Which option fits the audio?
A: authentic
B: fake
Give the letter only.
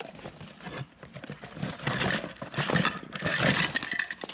A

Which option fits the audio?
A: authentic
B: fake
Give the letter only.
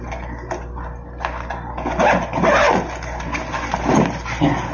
A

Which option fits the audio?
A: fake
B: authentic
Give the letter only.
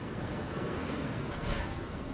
A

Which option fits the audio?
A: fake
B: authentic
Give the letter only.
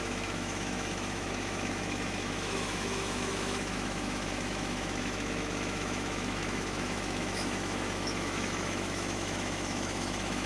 A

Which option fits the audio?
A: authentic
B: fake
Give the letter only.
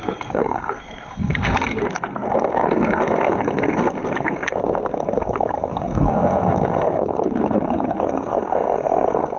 B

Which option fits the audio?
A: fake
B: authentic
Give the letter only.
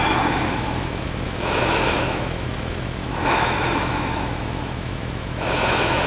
A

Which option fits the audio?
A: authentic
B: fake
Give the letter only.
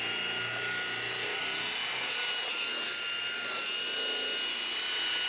A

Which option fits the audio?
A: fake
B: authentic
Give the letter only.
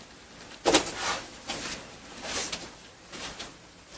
B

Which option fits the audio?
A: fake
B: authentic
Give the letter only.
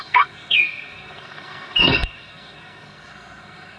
A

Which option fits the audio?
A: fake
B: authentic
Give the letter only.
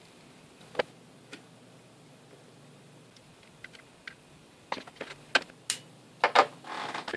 B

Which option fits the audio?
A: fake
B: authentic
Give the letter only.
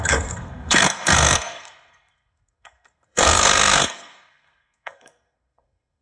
A